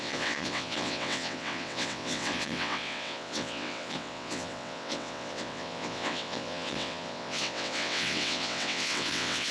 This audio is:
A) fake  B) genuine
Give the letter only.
A